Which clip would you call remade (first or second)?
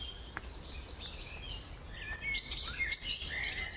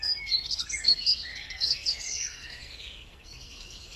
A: second